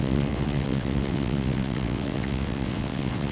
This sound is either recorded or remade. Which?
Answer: remade